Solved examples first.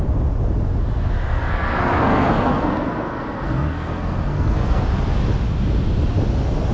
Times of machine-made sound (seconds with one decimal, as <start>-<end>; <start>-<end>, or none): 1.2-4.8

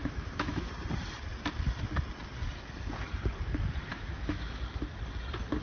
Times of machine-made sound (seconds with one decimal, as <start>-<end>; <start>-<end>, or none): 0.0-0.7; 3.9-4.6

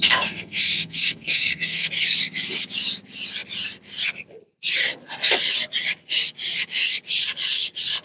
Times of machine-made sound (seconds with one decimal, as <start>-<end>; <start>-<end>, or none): 0.0-1.9

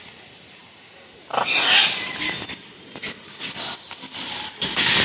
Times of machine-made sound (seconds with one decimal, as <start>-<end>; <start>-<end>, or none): none

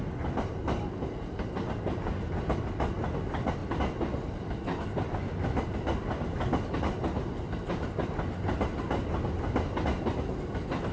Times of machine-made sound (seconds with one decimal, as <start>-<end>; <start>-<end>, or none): none